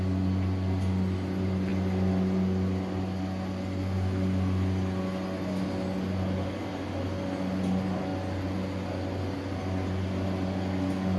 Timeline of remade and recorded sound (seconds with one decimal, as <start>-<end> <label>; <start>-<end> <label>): 0.0-11.2 recorded